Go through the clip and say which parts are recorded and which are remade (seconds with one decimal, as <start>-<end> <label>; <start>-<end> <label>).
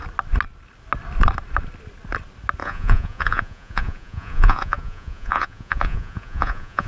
0.0-2.6 recorded; 2.6-6.9 remade